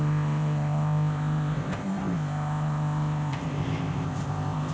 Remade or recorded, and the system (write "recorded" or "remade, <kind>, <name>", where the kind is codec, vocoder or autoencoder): remade, codec, ZipCodec